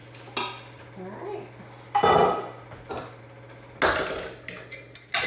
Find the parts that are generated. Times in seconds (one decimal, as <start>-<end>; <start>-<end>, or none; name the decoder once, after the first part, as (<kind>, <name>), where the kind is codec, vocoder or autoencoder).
none